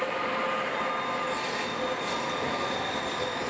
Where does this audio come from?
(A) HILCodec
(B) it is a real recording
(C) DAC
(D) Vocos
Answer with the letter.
B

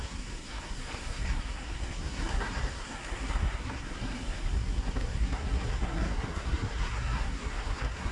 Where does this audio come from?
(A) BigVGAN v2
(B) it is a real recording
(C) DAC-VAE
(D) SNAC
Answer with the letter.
D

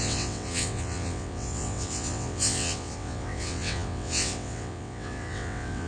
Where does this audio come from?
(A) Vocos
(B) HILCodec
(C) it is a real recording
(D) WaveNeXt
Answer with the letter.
D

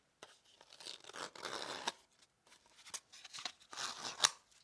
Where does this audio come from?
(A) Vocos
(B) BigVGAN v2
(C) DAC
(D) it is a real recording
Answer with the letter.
D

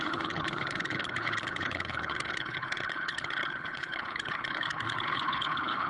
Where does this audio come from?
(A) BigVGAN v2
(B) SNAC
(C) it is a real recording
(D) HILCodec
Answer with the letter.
D